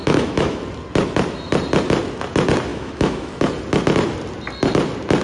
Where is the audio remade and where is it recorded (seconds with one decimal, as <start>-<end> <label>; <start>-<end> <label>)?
0.0-0.6 remade; 0.6-2.7 recorded; 2.7-3.3 remade; 3.3-5.2 recorded